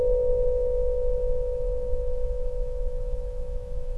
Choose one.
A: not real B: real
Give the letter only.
A